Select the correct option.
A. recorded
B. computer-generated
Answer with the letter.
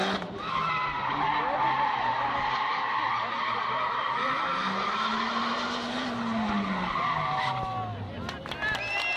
A